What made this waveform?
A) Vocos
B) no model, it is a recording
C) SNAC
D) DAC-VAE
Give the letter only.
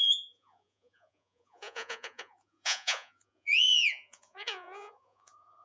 A